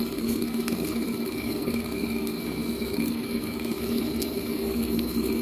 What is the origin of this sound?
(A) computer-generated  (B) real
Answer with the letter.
A